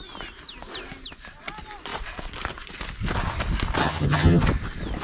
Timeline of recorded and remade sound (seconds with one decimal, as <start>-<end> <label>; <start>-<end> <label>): 0.0-3.8 recorded; 3.8-4.4 remade; 4.4-5.0 recorded